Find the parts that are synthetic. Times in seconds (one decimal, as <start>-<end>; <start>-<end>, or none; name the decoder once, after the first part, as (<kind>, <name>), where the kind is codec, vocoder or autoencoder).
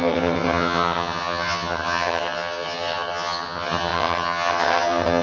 0.0-5.2 (vocoder, HiFi-GAN)